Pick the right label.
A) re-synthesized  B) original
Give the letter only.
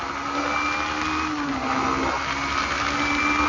B